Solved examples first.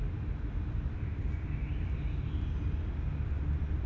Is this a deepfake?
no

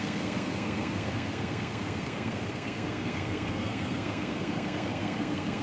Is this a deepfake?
yes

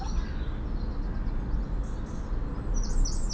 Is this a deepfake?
no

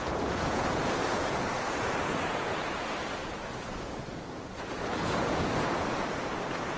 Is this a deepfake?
yes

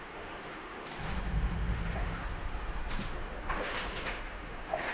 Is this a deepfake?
yes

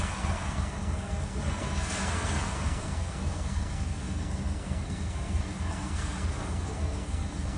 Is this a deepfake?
yes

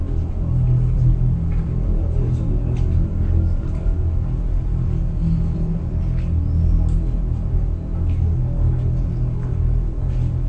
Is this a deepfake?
no